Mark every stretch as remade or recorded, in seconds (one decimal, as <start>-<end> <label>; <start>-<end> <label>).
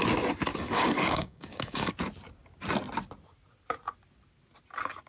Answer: 0.0-0.5 recorded; 0.5-1.9 remade; 1.9-5.1 recorded